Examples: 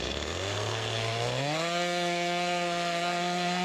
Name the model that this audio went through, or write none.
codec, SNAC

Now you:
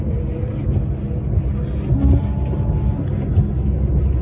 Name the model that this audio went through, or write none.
none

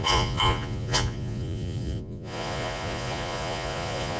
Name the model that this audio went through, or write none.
vocoder, Vocos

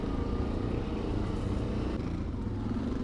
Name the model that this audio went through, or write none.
none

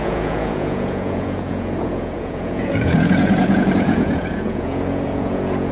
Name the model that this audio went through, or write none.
vocoder, Vocos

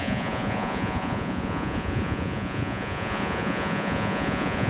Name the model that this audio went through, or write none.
vocoder, Vocos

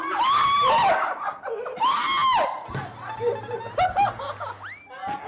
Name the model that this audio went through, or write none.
none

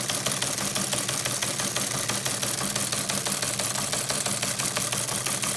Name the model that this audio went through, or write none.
none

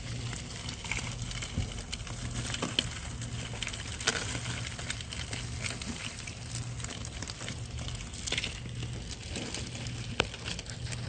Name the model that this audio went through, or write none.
none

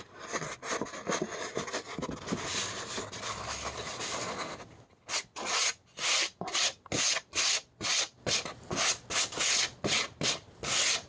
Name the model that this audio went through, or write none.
none